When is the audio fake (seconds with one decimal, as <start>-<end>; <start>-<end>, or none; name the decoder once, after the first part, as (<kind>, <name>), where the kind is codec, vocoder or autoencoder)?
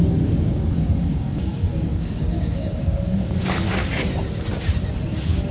0.0-3.8 (codec, DAC)